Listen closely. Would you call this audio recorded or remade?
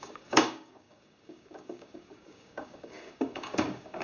remade